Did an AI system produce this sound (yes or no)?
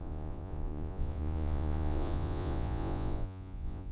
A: yes